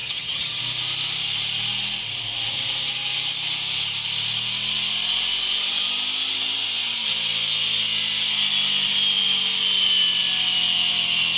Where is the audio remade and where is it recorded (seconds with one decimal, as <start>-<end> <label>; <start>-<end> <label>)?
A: 0.0-0.6 remade; 0.6-11.4 recorded

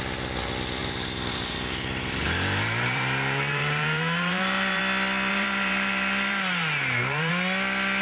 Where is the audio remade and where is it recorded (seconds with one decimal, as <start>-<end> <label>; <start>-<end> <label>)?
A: 0.0-0.8 recorded; 0.8-4.8 remade; 4.8-5.3 recorded; 5.3-7.3 remade; 7.3-8.0 recorded

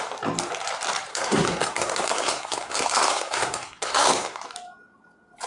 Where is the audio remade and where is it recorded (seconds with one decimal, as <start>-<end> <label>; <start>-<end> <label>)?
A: 0.0-1.1 recorded; 1.1-4.4 remade; 4.4-5.5 recorded

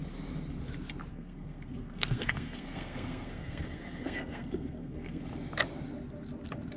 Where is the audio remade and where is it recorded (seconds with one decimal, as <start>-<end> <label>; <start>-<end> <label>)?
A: 0.0-1.1 recorded; 1.1-5.2 remade; 5.2-6.8 recorded

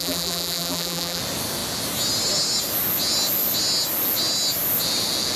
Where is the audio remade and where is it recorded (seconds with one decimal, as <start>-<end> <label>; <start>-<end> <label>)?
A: 0.0-1.2 remade; 1.2-5.4 recorded